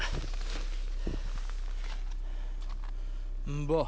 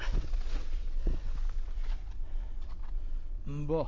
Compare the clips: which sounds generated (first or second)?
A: second